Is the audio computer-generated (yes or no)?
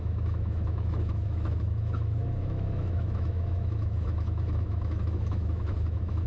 yes